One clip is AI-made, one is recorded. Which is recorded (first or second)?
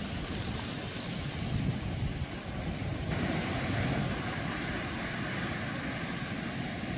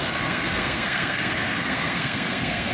first